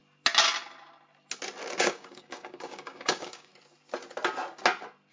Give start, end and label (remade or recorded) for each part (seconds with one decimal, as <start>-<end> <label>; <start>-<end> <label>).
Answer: 0.0-1.8 recorded; 1.8-3.5 remade; 3.5-5.1 recorded